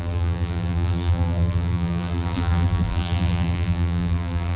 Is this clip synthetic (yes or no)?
yes